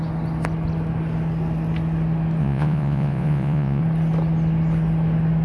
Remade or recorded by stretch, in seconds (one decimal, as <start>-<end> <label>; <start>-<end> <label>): 0.0-2.4 recorded; 2.4-3.8 remade; 3.8-5.4 recorded